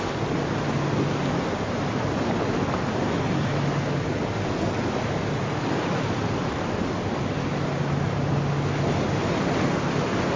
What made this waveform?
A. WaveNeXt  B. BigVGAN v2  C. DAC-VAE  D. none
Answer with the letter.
D